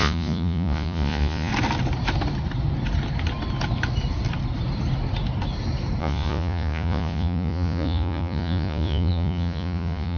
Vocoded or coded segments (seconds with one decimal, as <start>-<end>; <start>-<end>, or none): 0.0-1.5; 6.0-10.2